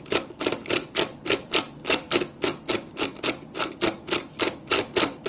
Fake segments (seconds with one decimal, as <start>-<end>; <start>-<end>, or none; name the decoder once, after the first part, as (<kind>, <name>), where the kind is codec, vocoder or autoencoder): none